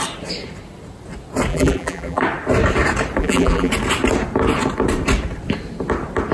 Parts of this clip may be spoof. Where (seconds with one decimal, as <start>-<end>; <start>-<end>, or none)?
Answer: 1.5-2.2; 3.2-3.7